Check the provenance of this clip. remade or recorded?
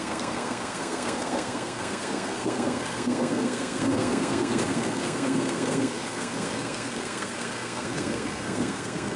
remade